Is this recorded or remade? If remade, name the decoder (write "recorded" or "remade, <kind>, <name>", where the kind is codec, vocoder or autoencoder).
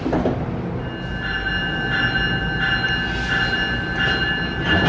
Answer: recorded